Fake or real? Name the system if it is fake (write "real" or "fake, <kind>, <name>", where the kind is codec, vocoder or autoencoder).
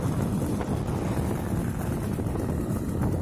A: real